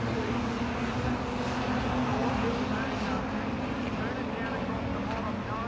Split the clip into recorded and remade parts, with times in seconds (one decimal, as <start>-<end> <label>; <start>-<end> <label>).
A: 0.0-5.7 recorded